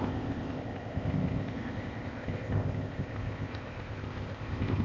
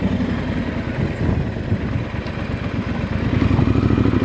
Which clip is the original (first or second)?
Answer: second